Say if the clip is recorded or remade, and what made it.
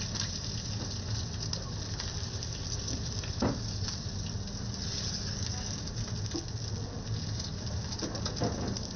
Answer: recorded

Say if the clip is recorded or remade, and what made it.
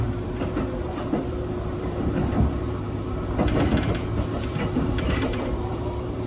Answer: remade, vocoder, BigVGAN v2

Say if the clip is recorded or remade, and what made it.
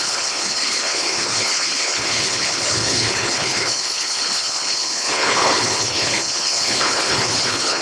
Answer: remade, codec, HILCodec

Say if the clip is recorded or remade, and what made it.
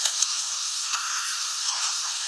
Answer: remade, codec, SNAC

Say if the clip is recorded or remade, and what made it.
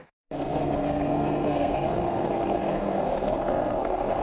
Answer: remade, codec, SNAC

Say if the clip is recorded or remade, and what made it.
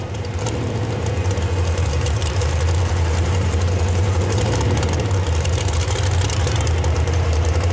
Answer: remade, vocoder, BigVGAN v2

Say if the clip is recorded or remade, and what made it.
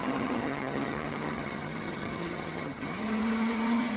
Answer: remade, vocoder, HiFi-GAN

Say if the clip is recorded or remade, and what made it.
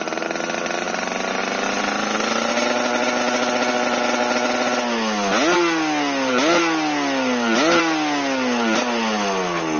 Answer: recorded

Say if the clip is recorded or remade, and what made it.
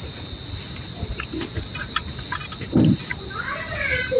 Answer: recorded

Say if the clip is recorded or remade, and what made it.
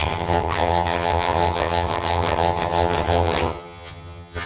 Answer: remade, vocoder, HiFi-GAN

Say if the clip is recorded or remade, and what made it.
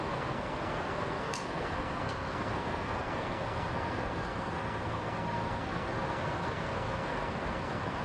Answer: remade, codec, SNAC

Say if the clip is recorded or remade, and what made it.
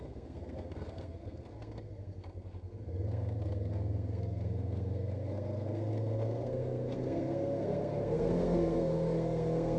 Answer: remade, codec, SNAC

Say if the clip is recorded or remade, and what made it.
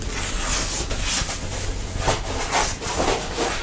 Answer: recorded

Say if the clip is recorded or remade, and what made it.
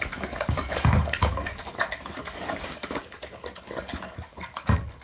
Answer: remade, codec, DAC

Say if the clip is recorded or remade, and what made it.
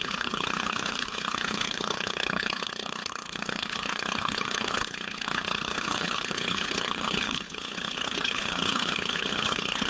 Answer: remade, codec, HILCodec